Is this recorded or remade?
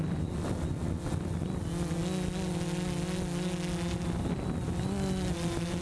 recorded